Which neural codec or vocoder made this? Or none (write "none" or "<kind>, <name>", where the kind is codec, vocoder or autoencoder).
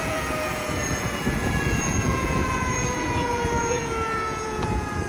vocoder, Vocos